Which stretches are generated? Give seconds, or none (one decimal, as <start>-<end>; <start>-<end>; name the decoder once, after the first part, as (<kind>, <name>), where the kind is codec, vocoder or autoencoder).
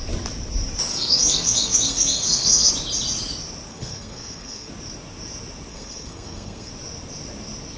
0.9-2.7 (codec, SNAC); 3.7-4.7; 5.7-6.7